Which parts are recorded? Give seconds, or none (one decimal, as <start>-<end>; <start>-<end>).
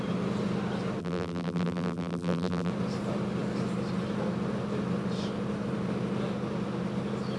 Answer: 0.0-1.0; 2.7-7.4